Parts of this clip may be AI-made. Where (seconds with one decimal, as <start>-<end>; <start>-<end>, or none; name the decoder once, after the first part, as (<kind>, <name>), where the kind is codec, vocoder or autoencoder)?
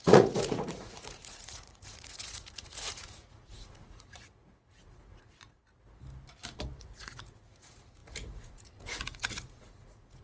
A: 0.0-5.6 (vocoder, Vocos); 6.8-10.2